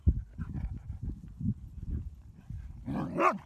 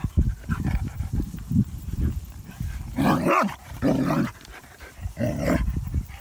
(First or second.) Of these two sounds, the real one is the first